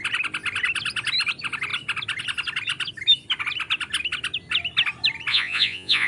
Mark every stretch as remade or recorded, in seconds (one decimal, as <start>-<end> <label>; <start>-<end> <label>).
0.0-5.3 recorded; 5.3-6.1 remade